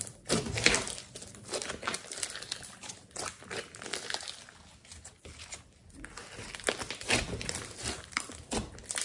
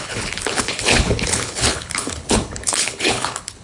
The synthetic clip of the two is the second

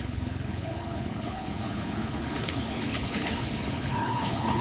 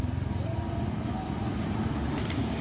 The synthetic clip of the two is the first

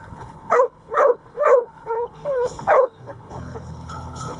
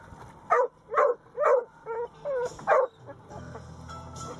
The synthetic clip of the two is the first